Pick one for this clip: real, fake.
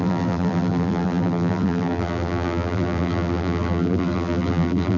fake